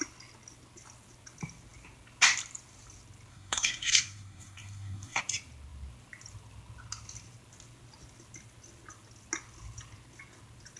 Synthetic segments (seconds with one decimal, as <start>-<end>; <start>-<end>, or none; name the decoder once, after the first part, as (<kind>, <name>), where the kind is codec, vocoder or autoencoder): 3.3-5.2 (codec, SNAC)